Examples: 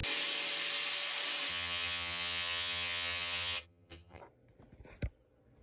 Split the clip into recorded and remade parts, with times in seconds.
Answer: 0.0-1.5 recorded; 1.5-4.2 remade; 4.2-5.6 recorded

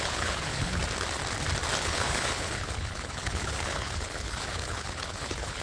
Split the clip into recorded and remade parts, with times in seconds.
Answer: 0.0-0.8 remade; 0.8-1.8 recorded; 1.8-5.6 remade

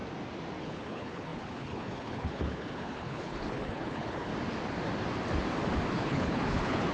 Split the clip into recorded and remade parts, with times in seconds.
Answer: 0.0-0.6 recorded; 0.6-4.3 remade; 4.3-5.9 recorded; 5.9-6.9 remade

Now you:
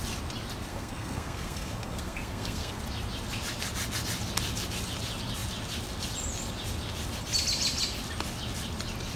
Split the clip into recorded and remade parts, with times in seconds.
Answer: 0.0-0.7 recorded; 0.7-2.8 remade; 2.8-9.2 recorded